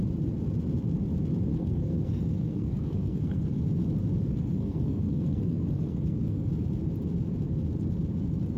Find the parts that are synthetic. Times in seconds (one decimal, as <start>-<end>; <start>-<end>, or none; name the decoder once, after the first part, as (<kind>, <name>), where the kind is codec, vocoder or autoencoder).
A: 1.5-3.6 (codec, SNAC); 4.2-6.5